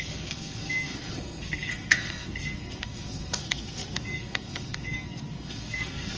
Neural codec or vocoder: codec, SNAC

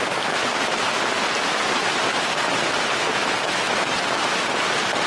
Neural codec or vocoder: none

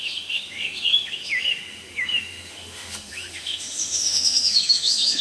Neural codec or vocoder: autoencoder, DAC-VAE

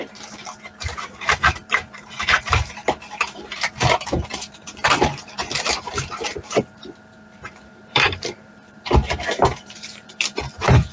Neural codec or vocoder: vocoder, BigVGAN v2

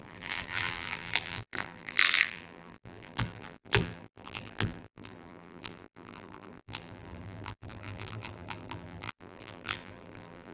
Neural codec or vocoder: vocoder, BigVGAN v2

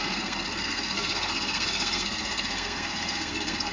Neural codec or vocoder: codec, SNAC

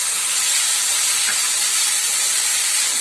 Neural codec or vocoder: none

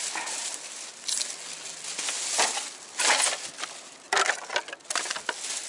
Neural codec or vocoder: none